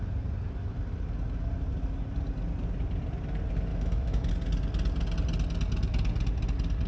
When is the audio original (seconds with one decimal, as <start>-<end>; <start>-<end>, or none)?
0.0-3.7; 4.3-6.9